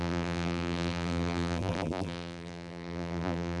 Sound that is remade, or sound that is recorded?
remade